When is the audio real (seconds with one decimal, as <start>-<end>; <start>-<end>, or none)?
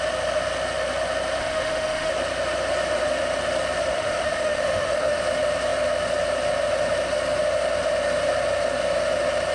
0.0-1.4; 2.1-3.9; 5.2-9.5